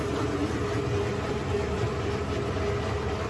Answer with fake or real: real